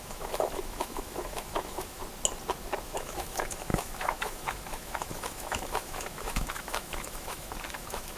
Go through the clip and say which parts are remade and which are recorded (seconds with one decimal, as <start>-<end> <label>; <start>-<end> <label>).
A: 0.0-2.0 remade; 2.0-2.8 recorded; 2.8-8.2 remade

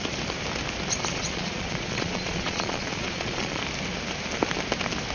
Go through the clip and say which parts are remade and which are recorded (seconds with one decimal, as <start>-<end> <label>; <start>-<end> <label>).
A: 0.0-1.1 recorded; 1.1-3.6 remade; 3.6-5.1 recorded

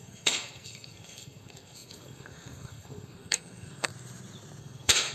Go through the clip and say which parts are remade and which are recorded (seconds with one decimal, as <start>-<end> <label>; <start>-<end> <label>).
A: 0.0-3.9 remade; 3.9-4.6 recorded; 4.6-5.1 remade

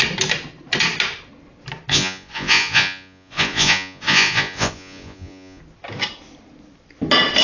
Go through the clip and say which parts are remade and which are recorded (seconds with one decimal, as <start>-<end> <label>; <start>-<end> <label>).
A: 0.0-1.9 recorded; 1.9-5.6 remade; 5.6-7.4 recorded

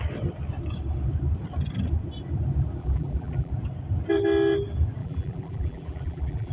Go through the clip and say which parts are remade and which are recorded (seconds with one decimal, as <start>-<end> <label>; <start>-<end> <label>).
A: 0.0-2.8 recorded; 2.8-3.5 remade; 3.5-5.0 recorded; 5.0-6.5 remade

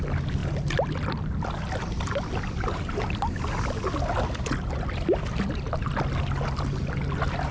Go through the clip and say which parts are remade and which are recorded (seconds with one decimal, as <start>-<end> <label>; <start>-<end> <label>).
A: 0.0-7.5 recorded

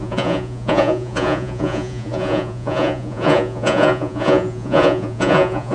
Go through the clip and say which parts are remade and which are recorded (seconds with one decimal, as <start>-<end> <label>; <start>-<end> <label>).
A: 0.0-5.7 remade

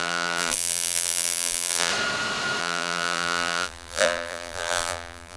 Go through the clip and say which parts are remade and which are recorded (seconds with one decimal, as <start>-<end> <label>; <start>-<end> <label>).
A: 0.0-1.9 remade; 1.9-2.6 recorded; 2.6-5.4 remade